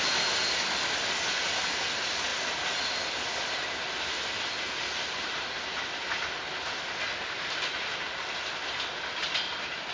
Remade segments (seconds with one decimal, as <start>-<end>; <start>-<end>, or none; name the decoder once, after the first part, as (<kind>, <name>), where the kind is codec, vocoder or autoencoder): none

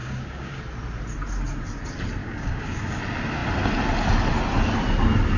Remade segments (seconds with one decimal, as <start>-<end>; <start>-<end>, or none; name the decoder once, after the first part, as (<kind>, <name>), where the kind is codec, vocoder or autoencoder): 0.0-0.6 (codec, DAC); 2.2-3.0